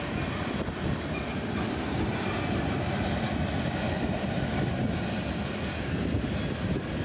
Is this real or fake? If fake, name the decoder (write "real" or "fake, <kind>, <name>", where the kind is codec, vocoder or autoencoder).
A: real